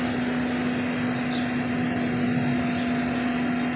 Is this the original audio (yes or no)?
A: yes